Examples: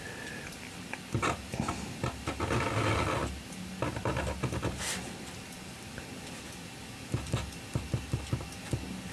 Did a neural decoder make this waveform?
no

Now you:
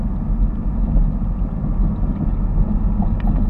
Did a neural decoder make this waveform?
no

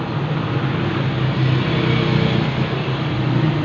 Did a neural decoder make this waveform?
no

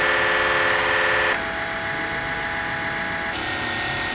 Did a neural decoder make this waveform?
no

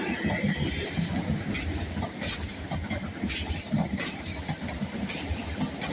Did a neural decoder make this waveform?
no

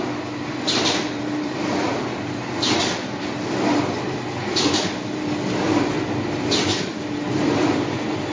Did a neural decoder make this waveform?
yes